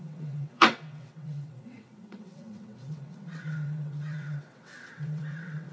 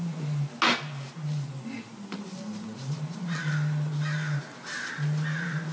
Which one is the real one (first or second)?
second